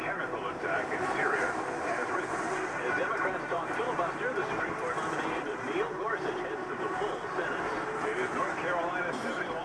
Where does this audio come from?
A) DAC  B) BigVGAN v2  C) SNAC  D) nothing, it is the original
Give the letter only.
B